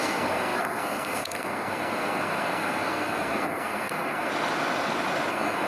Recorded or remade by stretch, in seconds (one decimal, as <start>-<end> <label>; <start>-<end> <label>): 0.0-4.3 remade; 4.3-5.3 recorded; 5.3-5.7 remade